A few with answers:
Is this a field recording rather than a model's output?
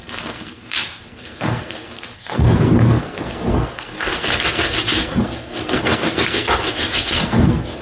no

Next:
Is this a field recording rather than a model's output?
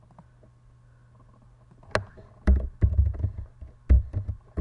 yes